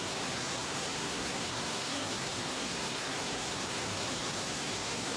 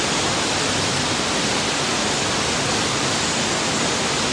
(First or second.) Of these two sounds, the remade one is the first